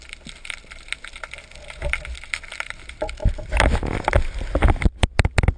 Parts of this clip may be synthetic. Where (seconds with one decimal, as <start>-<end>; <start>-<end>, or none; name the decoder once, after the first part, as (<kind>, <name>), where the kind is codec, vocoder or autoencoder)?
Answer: none

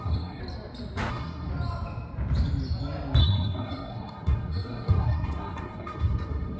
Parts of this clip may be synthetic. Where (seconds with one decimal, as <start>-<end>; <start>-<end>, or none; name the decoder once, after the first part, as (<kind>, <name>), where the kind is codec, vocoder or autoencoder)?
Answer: 0.0-0.4 (codec, SNAC); 1.1-1.5; 3.2-6.6